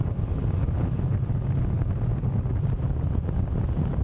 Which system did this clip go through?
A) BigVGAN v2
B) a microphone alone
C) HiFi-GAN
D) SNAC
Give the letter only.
A